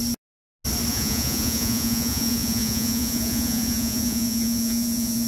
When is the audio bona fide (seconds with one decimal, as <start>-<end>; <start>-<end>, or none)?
0.0-0.9